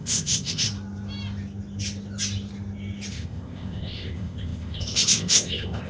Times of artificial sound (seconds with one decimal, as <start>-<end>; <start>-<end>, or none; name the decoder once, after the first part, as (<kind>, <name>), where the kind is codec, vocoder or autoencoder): 0.0-0.7 (codec, ZipCodec); 3.1-5.9